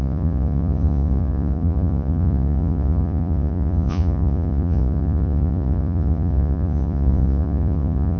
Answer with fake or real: fake